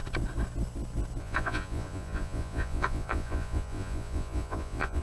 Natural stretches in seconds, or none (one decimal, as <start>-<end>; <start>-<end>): 0.0-1.2